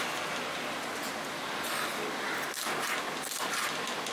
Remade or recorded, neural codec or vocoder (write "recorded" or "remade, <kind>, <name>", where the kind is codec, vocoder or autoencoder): recorded